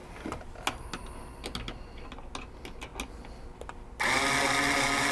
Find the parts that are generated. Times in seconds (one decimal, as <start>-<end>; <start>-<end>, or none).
none